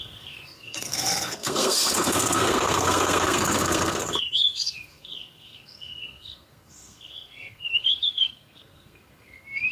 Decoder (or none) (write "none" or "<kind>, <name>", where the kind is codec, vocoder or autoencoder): codec, SNAC